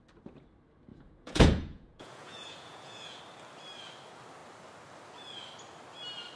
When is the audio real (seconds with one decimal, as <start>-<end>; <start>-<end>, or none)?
0.0-0.9; 3.2-6.4